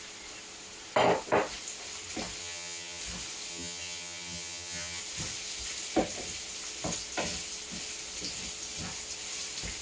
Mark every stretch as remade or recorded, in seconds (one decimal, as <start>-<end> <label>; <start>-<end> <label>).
0.0-2.4 recorded; 2.4-3.0 remade; 3.0-3.5 recorded; 3.5-5.0 remade; 5.0-9.8 recorded